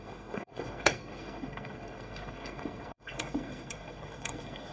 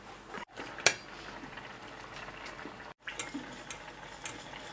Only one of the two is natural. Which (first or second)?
second